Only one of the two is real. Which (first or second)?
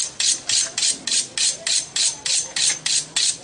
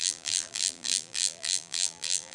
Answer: first